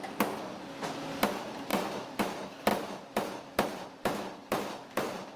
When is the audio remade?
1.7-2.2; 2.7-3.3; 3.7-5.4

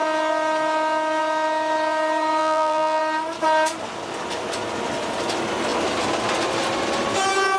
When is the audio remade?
2.4-3.0

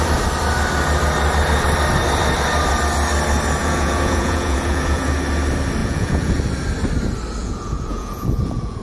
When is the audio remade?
3.6-5.1; 5.8-6.4; 7.4-8.8

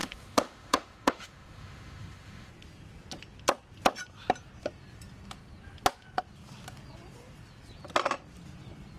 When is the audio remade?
0.0-2.5